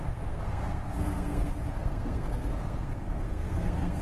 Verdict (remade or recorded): remade